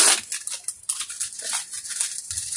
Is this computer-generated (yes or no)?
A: no